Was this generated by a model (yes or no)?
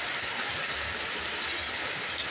no